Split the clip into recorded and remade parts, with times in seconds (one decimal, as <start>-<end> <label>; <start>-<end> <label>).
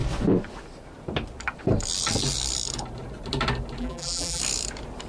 0.0-3.8 recorded; 3.8-4.4 remade; 4.4-5.1 recorded